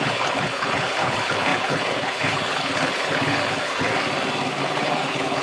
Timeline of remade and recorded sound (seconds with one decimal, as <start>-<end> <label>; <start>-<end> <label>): 0.0-3.9 remade; 3.9-4.6 recorded; 4.6-5.4 remade